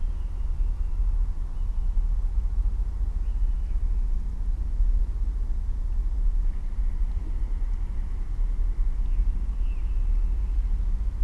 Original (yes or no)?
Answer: yes